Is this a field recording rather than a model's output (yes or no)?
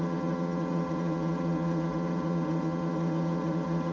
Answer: no